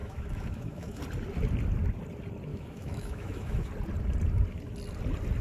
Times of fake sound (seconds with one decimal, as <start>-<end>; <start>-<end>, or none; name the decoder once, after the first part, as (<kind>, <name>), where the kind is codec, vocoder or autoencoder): 0.0-1.0 (autoencoder, DAC-VAE); 2.5-3.7